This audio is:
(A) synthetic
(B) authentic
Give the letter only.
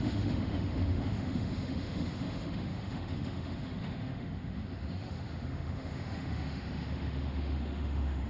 A